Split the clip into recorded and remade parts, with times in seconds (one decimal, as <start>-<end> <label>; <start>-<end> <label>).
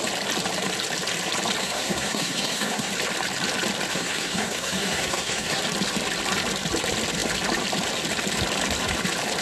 0.0-1.6 recorded; 1.6-2.9 remade; 2.9-3.9 recorded; 3.9-5.6 remade; 5.6-9.4 recorded